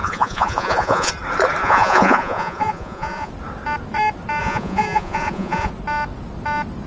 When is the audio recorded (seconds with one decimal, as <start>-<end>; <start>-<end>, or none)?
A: 1.1-1.6; 3.3-4.4; 5.7-6.9